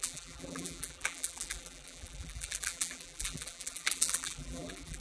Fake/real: fake